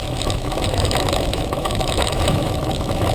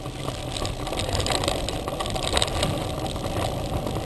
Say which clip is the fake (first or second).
first